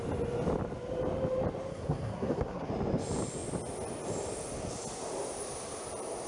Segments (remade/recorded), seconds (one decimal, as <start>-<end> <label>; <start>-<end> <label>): 0.0-1.7 recorded; 1.7-2.7 remade; 2.7-6.3 recorded